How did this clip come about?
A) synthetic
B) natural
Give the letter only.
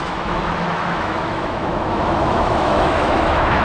A